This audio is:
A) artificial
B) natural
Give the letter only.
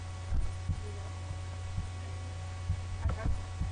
B